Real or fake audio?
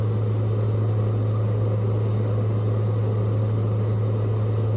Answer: real